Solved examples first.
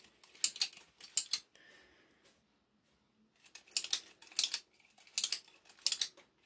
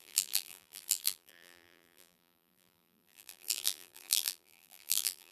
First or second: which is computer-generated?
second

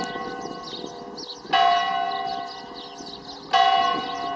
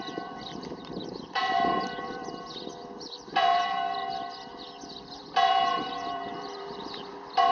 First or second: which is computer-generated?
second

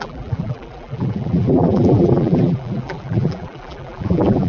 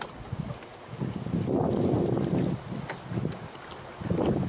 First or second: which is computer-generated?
first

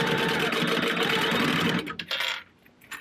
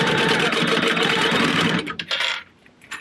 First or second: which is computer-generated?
second